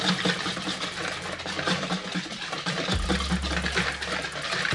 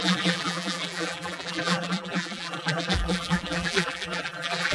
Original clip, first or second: first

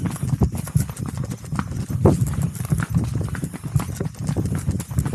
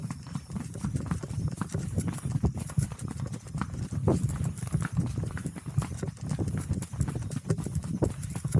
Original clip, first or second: first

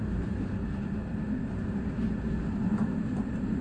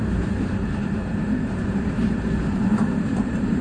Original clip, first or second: first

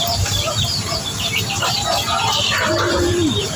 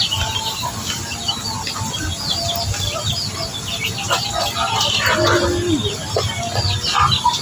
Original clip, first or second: second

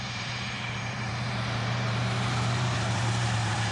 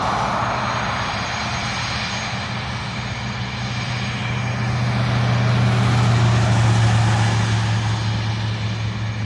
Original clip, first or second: second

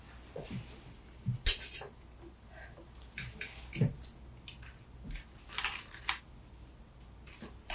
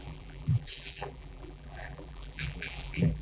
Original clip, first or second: first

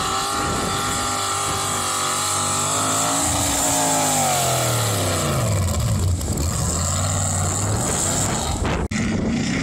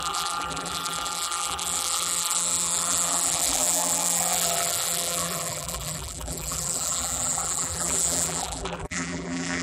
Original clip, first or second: first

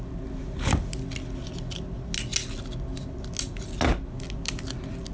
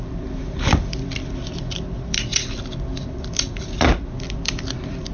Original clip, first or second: first